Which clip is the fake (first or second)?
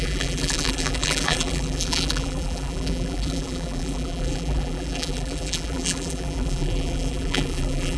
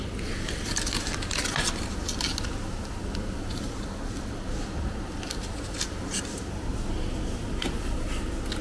first